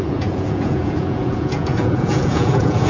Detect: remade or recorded remade